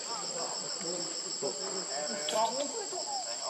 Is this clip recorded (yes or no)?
yes